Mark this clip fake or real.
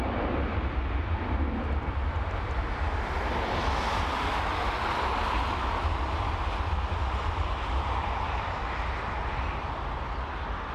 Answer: real